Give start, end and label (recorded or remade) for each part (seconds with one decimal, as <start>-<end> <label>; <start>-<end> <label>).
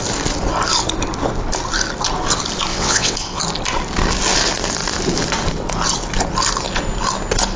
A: 0.0-2.7 recorded; 2.7-3.4 remade; 3.4-7.6 recorded